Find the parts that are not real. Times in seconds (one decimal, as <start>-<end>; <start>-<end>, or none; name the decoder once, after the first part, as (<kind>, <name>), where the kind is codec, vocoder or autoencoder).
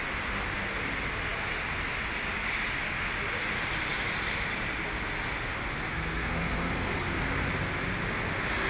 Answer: 5.9-7.0 (codec, SNAC)